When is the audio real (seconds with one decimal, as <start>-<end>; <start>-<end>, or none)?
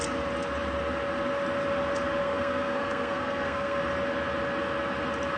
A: 0.0-2.2; 3.8-5.4